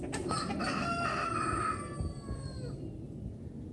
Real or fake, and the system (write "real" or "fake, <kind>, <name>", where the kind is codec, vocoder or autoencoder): real